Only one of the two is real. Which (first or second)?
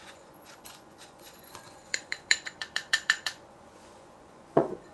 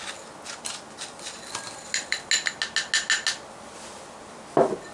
second